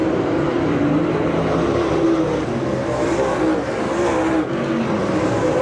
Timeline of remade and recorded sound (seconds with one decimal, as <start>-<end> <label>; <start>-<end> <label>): 0.0-3.4 remade; 3.4-5.0 recorded; 5.0-5.6 remade